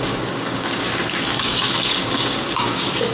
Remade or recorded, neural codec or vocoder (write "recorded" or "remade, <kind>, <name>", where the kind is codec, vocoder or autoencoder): remade, codec, DAC